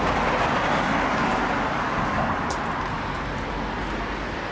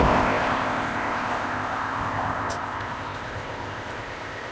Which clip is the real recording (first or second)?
first